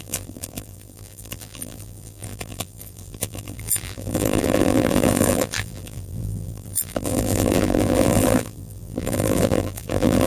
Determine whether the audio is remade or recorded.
remade